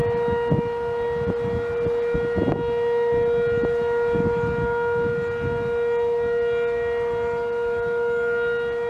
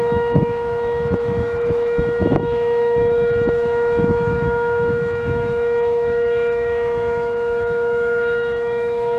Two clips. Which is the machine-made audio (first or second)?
second